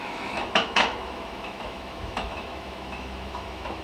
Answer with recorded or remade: remade